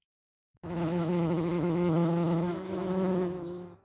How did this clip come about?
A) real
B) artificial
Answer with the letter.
B